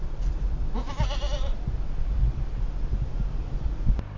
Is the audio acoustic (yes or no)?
no